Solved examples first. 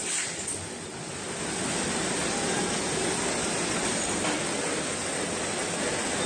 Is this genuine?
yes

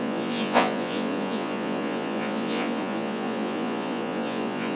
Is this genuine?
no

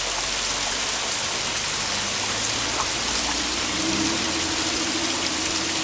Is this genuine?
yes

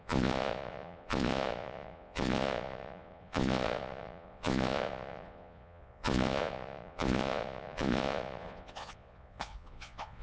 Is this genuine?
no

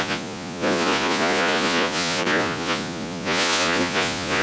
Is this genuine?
no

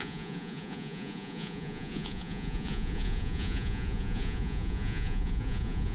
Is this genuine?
no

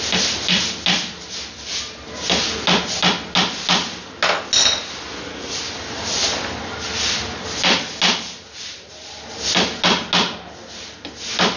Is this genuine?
yes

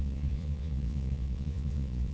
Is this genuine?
no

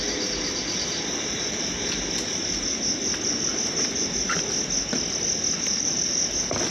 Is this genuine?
yes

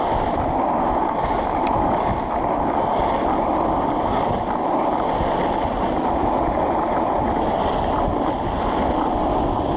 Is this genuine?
yes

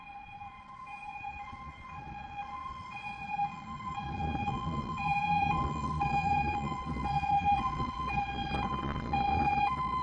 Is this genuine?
no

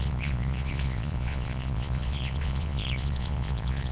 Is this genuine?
no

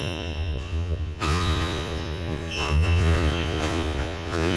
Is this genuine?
no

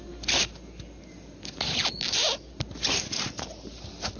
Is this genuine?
yes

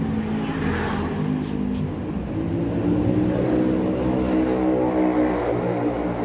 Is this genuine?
yes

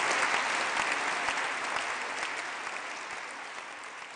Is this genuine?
yes